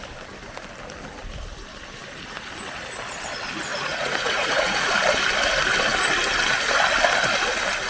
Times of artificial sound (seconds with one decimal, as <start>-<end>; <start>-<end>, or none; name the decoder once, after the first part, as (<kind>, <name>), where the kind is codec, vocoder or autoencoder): 3.7-4.9 (vocoder, Vocos)